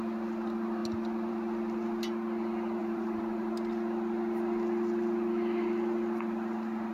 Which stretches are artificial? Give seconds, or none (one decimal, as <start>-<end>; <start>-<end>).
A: 2.8-3.5